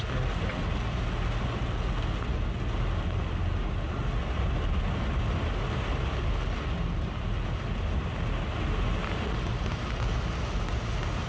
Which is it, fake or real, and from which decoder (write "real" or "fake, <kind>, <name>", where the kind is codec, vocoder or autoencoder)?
real